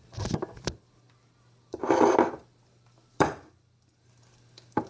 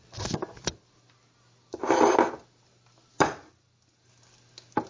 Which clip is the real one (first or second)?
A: second